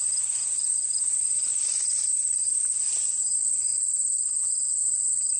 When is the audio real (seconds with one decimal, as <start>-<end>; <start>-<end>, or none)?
0.0-3.7; 4.8-5.4